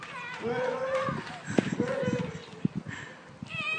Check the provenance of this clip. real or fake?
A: real